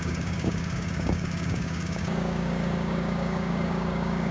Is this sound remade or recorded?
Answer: remade